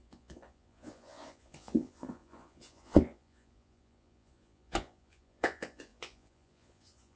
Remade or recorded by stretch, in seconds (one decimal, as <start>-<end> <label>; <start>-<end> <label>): 0.0-7.2 remade